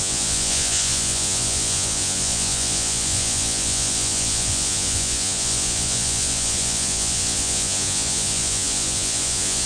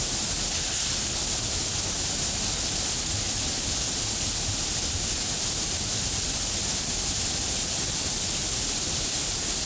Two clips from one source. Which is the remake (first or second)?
first